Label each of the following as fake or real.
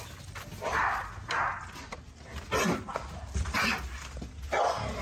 real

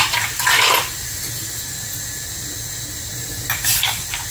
real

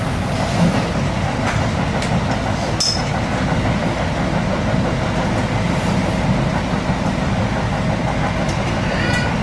real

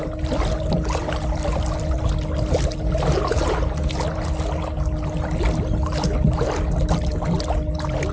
real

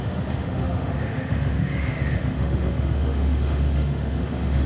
fake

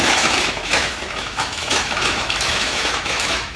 fake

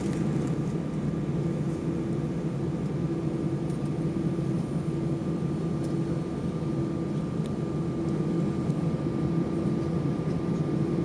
real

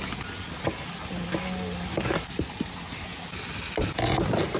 real